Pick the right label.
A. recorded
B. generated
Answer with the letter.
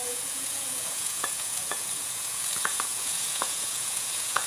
B